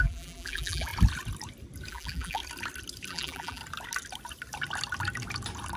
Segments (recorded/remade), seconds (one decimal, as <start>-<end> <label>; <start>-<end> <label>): 0.0-0.9 remade; 0.9-1.9 recorded; 1.9-2.4 remade; 2.4-3.1 recorded; 3.1-3.6 remade; 3.6-5.8 recorded